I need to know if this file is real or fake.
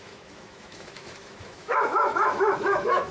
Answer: fake